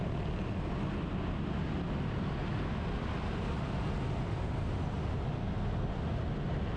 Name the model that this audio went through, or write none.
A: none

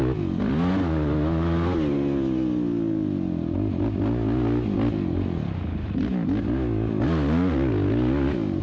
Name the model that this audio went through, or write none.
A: none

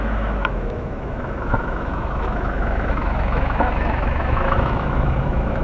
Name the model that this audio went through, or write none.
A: autoencoder, DAC-VAE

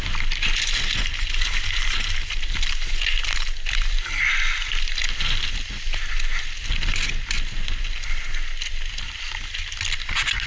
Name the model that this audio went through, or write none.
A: none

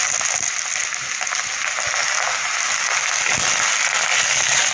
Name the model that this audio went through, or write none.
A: none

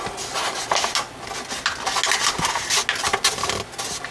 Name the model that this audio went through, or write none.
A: none